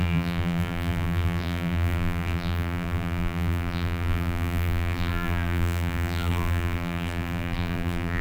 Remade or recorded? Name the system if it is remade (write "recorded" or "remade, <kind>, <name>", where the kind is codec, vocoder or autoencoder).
remade, vocoder, BigVGAN v2